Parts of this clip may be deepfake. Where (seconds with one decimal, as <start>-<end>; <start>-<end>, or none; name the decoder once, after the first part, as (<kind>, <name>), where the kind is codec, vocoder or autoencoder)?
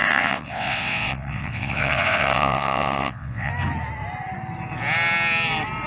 0.0-3.5 (vocoder, WaveNeXt)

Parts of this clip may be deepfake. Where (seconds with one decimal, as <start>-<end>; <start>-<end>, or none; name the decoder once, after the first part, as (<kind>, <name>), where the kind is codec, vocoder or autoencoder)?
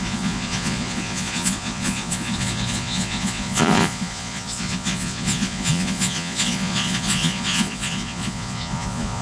0.0-9.2 (vocoder, Vocos)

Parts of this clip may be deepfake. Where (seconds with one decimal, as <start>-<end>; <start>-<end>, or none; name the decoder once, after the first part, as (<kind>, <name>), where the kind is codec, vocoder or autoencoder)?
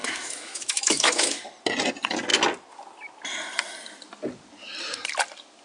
0.0-1.4 (autoencoder, DAC-VAE)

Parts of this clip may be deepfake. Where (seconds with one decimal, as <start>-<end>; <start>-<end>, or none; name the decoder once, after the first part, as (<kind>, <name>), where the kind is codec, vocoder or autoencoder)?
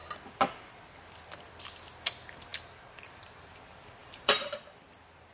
4.0-4.6 (vocoder, BigVGAN v2)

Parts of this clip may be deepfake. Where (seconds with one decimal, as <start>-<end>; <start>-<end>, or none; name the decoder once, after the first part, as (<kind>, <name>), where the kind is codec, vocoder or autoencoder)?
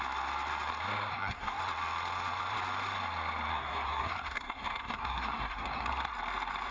1.1-1.6 (codec, SNAC); 3.5-5.9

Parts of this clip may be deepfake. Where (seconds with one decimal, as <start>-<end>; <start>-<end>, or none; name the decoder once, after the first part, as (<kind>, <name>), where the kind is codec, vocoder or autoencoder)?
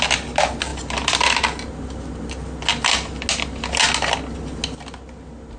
none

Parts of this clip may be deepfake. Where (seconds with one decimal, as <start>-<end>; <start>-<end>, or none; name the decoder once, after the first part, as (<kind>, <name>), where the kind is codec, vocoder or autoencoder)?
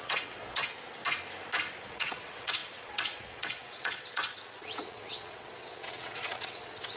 0.0-1.0 (vocoder, WaveNeXt); 1.8-7.0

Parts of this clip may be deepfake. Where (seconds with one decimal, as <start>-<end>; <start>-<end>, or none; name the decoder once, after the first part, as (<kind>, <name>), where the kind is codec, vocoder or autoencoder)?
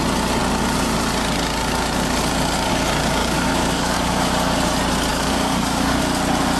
3.2-4.3 (codec, DAC); 5.1-6.0